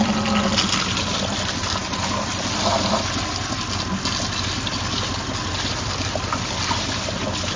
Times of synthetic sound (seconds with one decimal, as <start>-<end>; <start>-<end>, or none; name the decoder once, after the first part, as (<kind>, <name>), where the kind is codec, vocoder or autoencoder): none